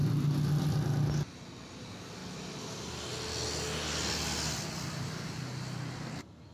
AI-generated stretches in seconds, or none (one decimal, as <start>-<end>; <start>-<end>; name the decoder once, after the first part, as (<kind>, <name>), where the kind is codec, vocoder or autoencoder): none